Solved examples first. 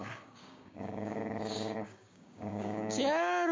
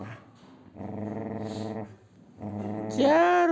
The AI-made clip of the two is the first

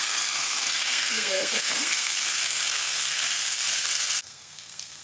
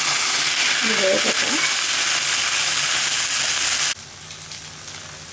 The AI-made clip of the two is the first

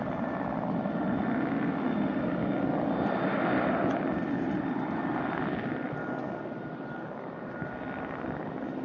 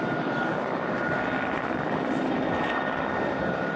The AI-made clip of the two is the second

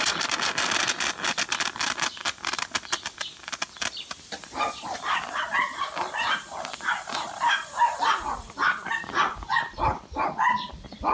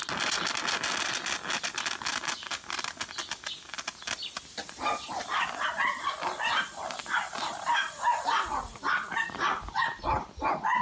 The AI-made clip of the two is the first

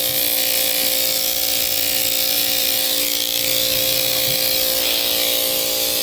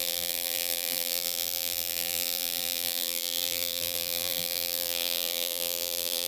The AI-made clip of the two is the second